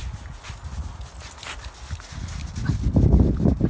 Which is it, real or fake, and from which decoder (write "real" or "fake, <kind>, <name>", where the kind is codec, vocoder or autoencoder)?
real